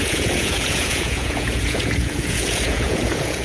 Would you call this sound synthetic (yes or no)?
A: yes